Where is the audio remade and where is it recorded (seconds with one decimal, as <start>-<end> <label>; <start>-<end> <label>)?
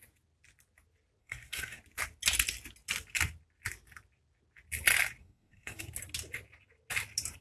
0.0-1.2 recorded; 1.2-1.8 remade; 1.8-5.2 recorded; 5.2-5.8 remade; 5.8-7.4 recorded